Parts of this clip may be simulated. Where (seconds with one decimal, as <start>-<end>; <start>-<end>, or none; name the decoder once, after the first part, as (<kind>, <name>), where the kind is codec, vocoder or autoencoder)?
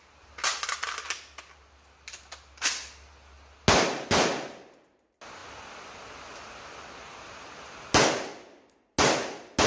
none